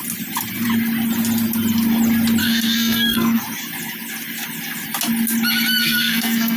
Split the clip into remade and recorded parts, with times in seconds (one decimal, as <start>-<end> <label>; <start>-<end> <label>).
0.0-2.4 recorded; 2.4-3.4 remade; 3.4-5.8 recorded; 5.8-6.6 remade

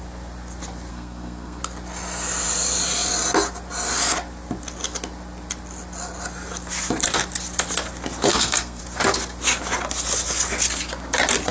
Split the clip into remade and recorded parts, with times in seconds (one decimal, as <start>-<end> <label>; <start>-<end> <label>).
0.0-0.9 recorded; 0.9-1.6 remade; 1.6-8.3 recorded; 8.3-8.8 remade; 8.8-11.5 recorded

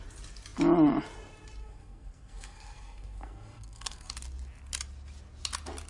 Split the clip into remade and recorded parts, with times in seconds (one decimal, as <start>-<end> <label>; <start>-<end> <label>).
0.0-1.6 recorded; 1.6-4.1 remade; 4.1-5.9 recorded

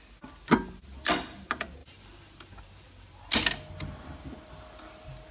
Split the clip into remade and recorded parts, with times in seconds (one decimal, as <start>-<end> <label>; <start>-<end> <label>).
0.0-5.3 recorded

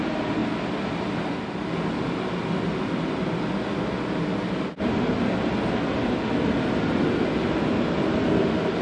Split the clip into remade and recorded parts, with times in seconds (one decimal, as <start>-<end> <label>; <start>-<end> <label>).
0.0-8.8 recorded